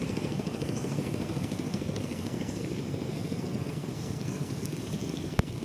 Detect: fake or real fake